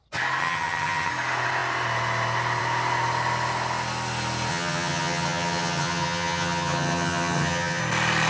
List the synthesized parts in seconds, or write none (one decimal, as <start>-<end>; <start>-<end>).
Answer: 0.4-1.1; 4.5-7.8